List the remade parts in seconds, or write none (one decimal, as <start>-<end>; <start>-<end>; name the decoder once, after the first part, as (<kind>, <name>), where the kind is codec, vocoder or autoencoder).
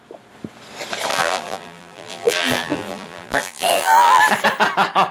1.1-4.2 (vocoder, BigVGAN v2)